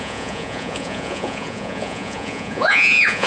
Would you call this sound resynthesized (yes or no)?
yes